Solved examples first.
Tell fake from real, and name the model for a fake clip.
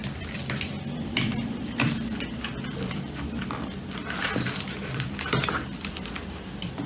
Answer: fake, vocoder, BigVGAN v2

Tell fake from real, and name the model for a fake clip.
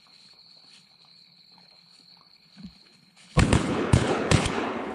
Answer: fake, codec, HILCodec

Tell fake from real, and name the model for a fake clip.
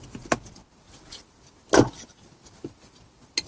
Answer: real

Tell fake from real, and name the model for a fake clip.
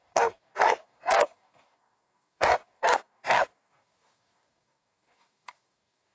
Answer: fake, codec, DAC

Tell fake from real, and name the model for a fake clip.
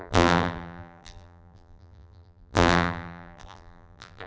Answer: fake, vocoder, BigVGAN v2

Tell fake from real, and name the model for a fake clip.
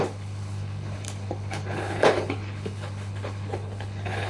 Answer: fake, codec, HILCodec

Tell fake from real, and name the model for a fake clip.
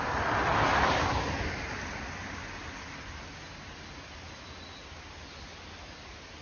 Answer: real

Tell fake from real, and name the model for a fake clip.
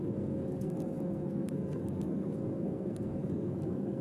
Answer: fake, codec, SNAC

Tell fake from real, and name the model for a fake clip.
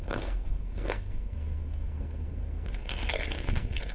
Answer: fake, codec, SNAC